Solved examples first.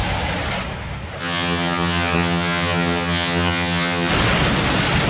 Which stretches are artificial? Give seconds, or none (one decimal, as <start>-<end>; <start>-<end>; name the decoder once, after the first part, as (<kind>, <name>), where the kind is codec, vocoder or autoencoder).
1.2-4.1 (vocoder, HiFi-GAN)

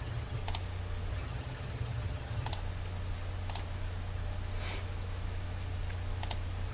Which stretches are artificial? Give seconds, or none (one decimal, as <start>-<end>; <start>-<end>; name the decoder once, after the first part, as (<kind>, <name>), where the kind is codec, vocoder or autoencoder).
0.0-0.4 (vocoder, HiFi-GAN); 1.1-2.5

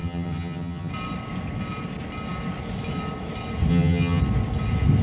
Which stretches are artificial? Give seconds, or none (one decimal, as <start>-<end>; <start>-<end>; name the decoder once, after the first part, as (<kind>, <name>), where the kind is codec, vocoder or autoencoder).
0.0-0.9 (vocoder, HiFi-GAN); 3.7-4.2

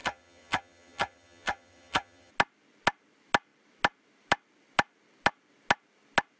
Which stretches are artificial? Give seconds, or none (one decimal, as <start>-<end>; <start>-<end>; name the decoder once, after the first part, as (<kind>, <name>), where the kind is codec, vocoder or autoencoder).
0.0-2.3 (vocoder, HiFi-GAN)

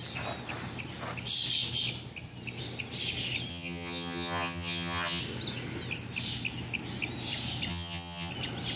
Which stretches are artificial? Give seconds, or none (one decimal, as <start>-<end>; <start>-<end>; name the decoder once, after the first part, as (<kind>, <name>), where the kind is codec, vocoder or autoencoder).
3.5-5.2 (vocoder, HiFi-GAN); 7.7-8.3